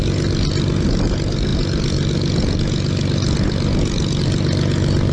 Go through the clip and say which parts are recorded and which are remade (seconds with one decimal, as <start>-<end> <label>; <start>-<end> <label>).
0.0-5.1 recorded